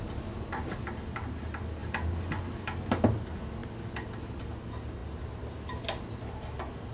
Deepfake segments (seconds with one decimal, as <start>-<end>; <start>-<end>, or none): none